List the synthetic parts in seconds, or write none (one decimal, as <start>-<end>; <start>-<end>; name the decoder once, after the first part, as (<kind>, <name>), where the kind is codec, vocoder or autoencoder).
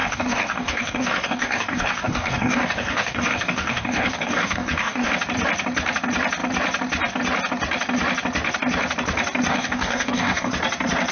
0.0-5.1 (codec, DAC); 9.5-10.5